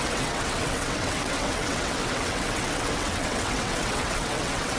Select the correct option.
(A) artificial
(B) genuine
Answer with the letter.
A